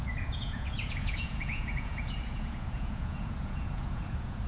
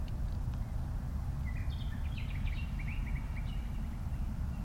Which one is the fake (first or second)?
first